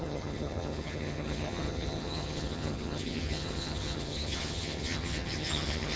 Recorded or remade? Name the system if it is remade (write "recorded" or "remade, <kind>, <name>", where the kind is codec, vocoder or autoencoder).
remade, vocoder, HiFi-GAN